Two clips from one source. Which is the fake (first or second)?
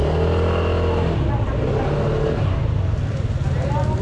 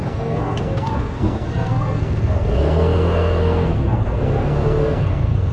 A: second